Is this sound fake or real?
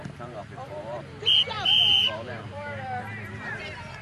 fake